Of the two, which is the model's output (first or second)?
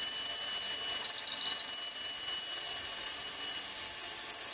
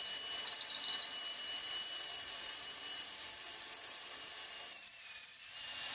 second